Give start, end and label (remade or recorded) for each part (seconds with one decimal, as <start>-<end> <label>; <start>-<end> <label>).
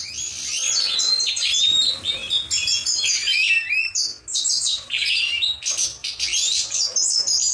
0.0-4.3 recorded; 4.3-5.2 remade; 5.2-6.0 recorded; 6.0-7.0 remade; 7.0-7.5 recorded